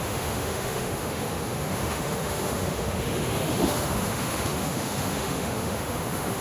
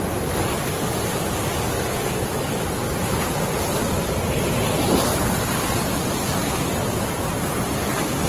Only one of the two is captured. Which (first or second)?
second